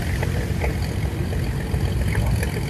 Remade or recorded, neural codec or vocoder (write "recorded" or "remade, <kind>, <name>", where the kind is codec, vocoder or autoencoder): recorded